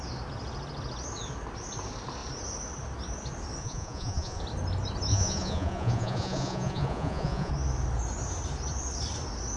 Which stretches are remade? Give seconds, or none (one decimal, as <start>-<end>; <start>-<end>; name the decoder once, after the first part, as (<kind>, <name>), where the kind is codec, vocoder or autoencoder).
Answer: 3.6-4.4 (vocoder, Vocos); 5.1-7.5